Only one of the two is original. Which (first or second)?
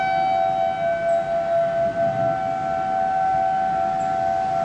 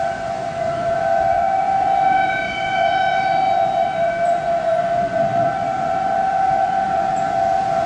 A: first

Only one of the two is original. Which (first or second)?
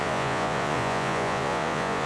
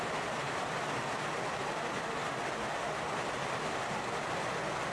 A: second